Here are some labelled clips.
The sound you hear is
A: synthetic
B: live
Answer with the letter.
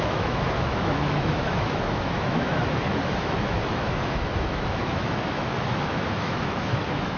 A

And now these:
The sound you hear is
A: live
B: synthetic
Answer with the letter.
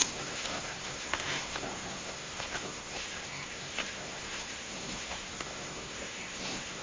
B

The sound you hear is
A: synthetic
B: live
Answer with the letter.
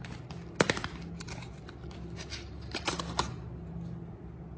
B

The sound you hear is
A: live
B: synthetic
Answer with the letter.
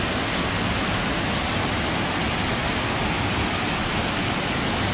A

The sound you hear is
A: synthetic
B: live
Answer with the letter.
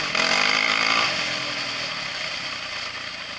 B